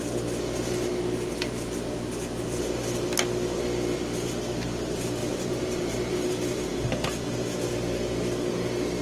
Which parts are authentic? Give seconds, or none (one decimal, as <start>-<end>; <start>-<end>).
0.0-5.2; 6.9-9.0